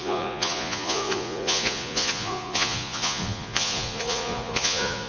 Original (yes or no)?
no